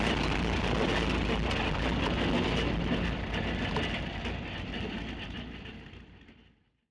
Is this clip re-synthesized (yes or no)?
no